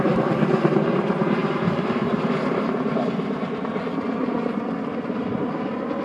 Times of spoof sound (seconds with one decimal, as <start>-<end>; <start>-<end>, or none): none